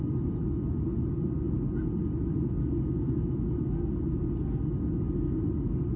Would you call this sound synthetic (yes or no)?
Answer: no